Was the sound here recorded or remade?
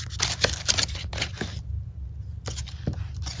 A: recorded